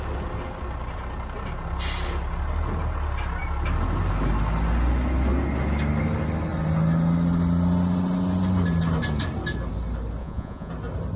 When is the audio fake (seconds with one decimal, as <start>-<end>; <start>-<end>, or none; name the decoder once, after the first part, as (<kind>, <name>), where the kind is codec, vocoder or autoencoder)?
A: 10.2-10.7 (vocoder, Vocos)